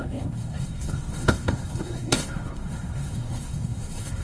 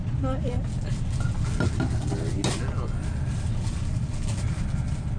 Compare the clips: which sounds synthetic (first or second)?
first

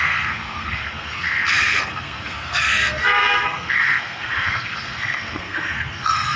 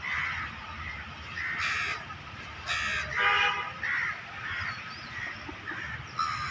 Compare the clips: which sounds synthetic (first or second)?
first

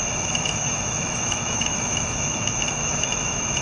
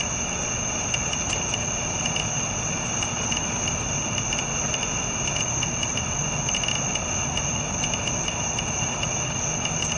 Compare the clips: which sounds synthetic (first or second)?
first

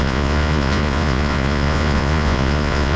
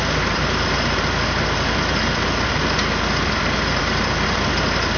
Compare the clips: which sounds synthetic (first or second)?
first